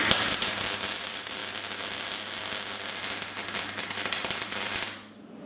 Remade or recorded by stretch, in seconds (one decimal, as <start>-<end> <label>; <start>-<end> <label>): 0.0-1.4 remade; 1.4-3.8 recorded; 3.8-5.5 remade